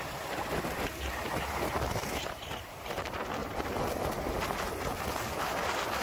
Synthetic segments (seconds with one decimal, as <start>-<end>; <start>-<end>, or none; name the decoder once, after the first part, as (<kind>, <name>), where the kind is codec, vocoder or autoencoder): 2.0-2.8 (vocoder, BigVGAN v2); 3.4-4.4